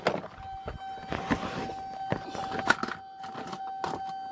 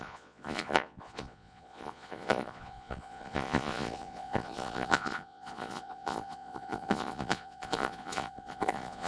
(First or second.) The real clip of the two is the first